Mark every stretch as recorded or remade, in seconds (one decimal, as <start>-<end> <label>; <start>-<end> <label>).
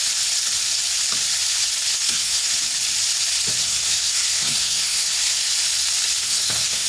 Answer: 0.0-1.9 recorded; 1.9-2.5 remade; 2.5-3.6 recorded; 3.6-5.5 remade; 5.5-6.2 recorded; 6.2-6.9 remade